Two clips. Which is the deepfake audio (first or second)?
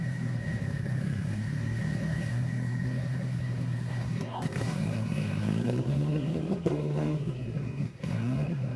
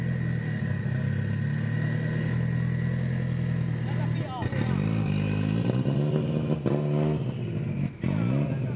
first